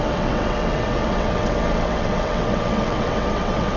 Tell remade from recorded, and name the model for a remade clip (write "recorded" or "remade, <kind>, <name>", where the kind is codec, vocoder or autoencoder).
remade, vocoder, WaveNeXt